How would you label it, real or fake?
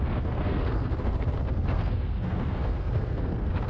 fake